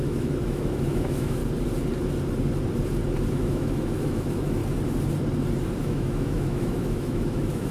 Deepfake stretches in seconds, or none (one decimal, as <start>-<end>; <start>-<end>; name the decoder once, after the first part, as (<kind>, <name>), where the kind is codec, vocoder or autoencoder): 0.0-1.4 (autoencoder, DAC-VAE); 3.3-4.6; 5.8-7.7